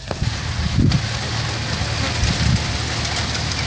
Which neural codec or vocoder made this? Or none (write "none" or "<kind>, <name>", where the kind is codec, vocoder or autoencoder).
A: none